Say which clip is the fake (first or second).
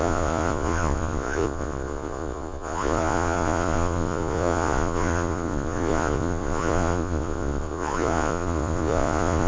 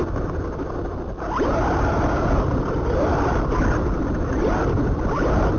first